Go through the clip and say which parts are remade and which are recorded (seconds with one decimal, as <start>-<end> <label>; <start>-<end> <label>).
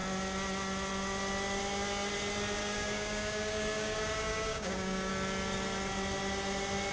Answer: 0.0-2.6 recorded; 2.6-5.1 remade; 5.1-6.9 recorded